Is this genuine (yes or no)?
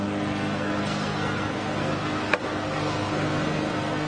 no